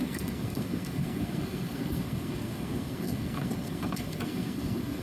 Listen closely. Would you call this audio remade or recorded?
remade